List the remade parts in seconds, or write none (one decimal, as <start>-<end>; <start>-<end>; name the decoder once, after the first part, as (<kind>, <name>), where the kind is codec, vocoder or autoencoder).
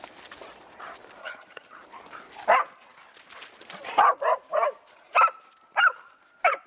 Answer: 1.2-1.8 (vocoder, HiFi-GAN)